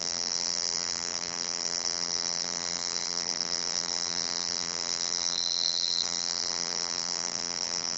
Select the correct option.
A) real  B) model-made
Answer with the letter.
B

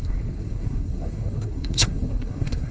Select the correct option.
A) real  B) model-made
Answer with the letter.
B